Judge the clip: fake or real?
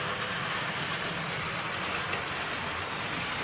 real